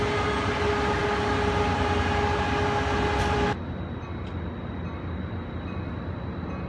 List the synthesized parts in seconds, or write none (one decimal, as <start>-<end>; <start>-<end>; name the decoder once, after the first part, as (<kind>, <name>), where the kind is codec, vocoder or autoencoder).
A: none